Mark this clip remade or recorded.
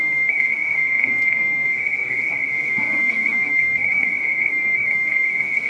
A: remade